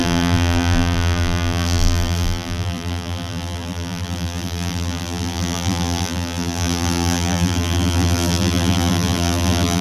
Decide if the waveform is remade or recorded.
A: remade